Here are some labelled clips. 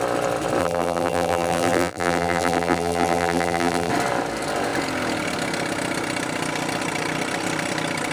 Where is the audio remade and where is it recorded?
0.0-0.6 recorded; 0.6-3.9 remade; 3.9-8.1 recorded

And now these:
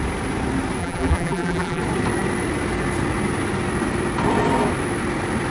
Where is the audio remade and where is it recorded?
0.0-0.8 recorded; 0.8-1.8 remade; 1.8-5.5 recorded

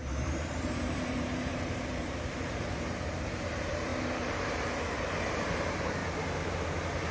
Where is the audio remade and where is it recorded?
0.0-6.0 remade; 6.0-7.1 recorded

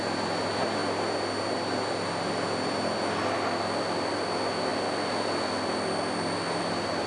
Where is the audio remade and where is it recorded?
0.0-7.1 recorded